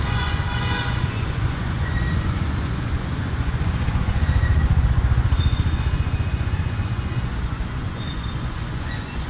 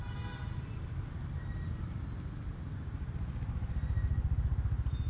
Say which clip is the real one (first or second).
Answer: second